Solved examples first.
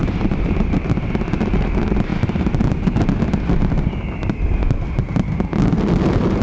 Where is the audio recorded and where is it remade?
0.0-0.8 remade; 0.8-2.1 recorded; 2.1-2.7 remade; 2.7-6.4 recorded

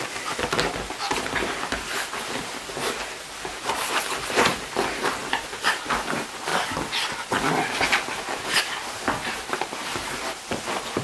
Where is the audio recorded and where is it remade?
0.0-5.2 recorded; 5.2-5.8 remade; 5.8-9.2 recorded; 9.2-10.1 remade; 10.1-11.0 recorded

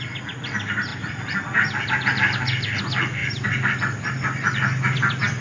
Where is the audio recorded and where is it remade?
0.0-5.4 recorded